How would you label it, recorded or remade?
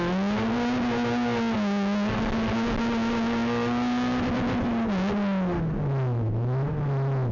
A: recorded